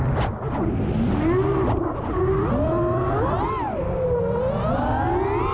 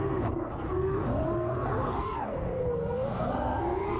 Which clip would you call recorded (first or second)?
first